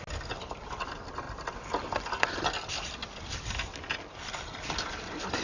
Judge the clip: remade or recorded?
recorded